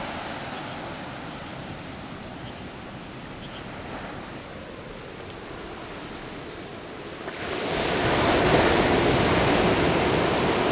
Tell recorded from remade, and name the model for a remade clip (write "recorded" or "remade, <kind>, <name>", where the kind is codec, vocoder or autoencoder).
recorded